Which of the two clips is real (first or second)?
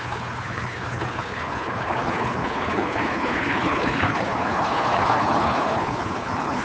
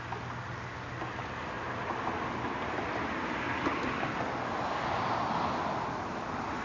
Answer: second